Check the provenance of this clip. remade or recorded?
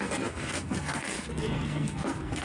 remade